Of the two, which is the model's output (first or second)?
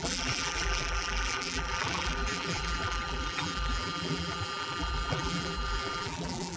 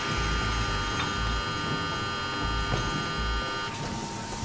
first